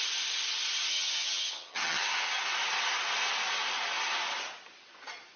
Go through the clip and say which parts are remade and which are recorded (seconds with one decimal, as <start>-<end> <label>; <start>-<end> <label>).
0.0-0.9 recorded; 0.9-2.4 remade; 2.4-5.4 recorded